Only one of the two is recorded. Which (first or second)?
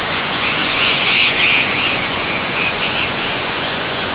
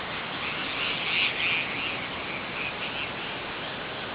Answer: second